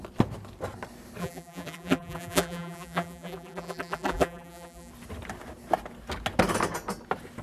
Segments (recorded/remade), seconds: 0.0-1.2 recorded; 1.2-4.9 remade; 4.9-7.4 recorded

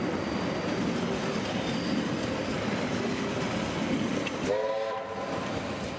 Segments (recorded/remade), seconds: 0.0-6.0 recorded

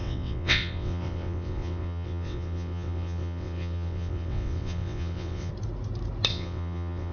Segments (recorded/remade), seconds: 0.0-5.5 remade; 5.5-6.3 recorded; 6.3-7.1 remade

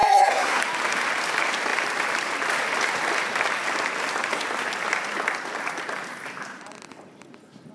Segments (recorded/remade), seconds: 0.0-0.6 remade; 0.6-7.7 recorded

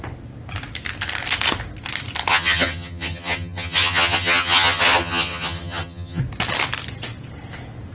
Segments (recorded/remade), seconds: 0.0-2.3 recorded; 2.3-6.2 remade; 6.2-7.9 recorded